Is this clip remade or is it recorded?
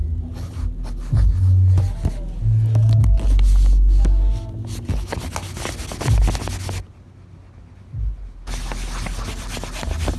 recorded